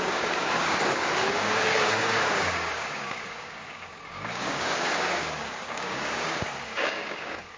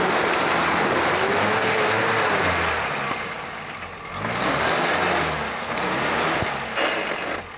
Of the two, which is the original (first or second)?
second